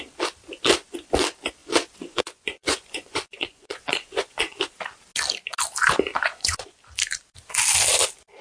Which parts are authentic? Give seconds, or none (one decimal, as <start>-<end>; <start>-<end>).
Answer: 0.0-1.6; 4.6-6.1; 6.8-8.4